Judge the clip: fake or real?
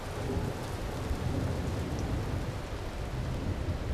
real